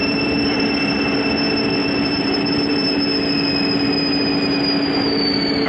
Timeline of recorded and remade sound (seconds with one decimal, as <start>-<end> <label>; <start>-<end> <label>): 0.0-0.6 remade; 0.6-1.8 recorded; 1.8-3.0 remade; 3.0-5.7 recorded